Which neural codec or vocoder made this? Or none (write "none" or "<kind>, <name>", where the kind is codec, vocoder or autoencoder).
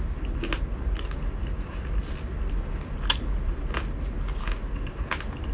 none